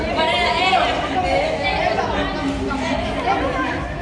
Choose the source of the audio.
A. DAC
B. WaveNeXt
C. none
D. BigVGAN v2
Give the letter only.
C